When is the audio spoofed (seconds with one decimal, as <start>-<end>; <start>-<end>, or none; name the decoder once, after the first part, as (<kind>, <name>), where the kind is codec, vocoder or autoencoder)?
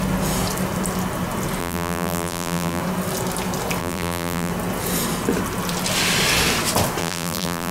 1.6-2.8 (vocoder, BigVGAN v2); 3.8-4.5; 7.0-7.7